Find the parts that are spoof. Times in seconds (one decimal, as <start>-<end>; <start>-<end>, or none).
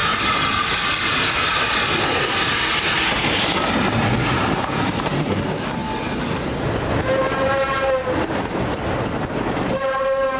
none